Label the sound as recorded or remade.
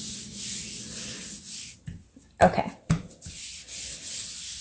recorded